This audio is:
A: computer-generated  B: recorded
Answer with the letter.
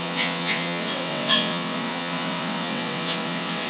A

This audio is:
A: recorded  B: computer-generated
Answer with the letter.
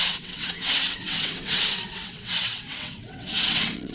B